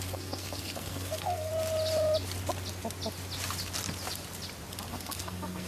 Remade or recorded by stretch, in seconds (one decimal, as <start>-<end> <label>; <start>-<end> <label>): 0.0-1.5 remade; 1.5-4.9 recorded; 4.9-5.7 remade